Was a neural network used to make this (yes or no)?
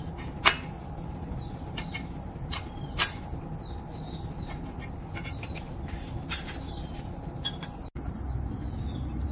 no